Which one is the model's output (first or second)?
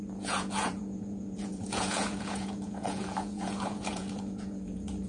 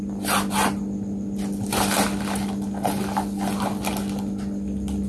first